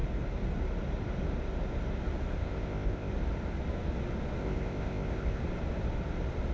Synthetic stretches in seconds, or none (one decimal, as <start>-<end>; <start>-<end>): 2.4-3.1; 4.4-5.4